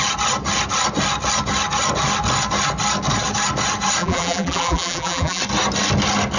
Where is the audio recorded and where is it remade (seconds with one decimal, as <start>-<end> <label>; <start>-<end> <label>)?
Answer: 0.0-4.0 recorded; 4.0-5.4 remade; 5.4-6.4 recorded